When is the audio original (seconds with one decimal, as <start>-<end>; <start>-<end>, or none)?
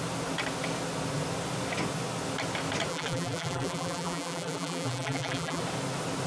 0.0-2.9; 5.6-6.3